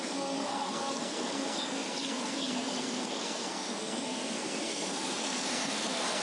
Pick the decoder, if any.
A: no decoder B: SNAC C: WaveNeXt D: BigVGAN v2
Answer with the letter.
B